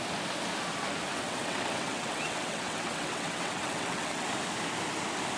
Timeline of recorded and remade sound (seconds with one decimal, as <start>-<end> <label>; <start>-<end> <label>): 0.0-1.1 recorded; 1.1-4.3 remade; 4.3-5.4 recorded